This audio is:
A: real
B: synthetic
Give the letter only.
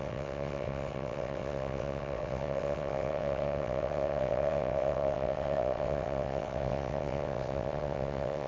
B